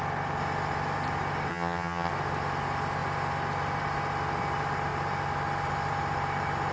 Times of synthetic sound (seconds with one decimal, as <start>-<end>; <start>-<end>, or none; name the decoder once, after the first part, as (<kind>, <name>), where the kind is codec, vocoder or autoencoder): 1.5-2.1 (vocoder, HiFi-GAN)